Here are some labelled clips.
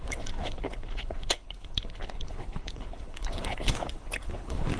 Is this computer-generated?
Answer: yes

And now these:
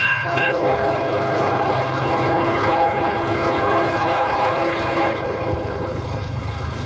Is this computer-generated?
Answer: yes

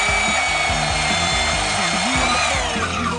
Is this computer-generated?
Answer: no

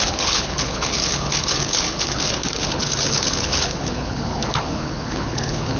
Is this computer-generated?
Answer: yes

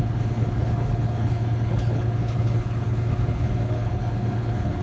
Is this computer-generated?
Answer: yes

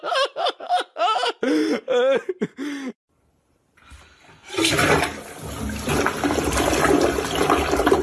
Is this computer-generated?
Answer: no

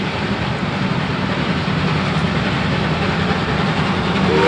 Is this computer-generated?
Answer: no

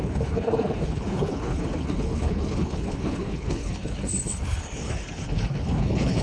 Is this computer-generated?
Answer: yes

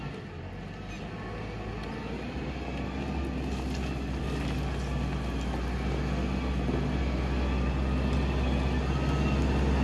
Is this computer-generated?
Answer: no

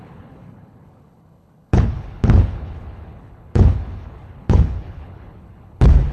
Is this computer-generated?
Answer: yes